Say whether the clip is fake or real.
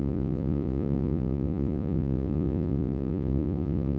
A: fake